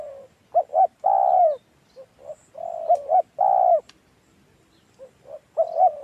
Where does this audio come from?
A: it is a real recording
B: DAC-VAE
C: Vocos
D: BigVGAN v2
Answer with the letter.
A